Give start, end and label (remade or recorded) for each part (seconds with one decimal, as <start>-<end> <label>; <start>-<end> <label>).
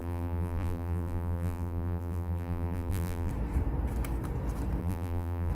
0.0-3.3 remade; 3.3-4.8 recorded; 4.8-5.5 remade